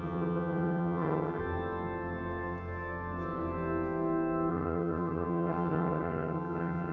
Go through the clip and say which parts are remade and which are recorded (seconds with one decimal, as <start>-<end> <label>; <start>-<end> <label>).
0.0-1.4 remade; 1.4-4.5 recorded; 4.5-6.9 remade